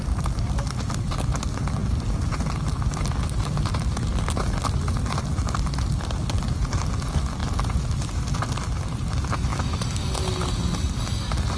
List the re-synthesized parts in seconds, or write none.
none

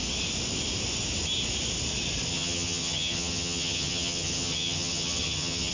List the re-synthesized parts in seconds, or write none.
2.3-5.7 (vocoder, HiFi-GAN)

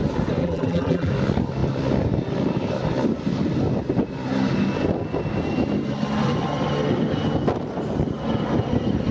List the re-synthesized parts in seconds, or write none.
0.4-1.1 (vocoder, BigVGAN v2)

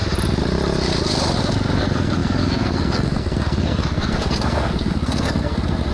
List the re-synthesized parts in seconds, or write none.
1.8-5.9 (codec, SNAC)